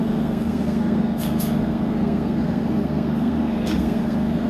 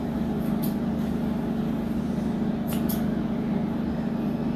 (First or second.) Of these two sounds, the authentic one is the second